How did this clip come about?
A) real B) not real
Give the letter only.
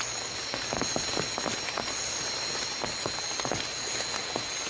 A